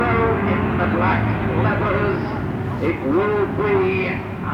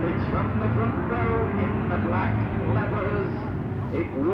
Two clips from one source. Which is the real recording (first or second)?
first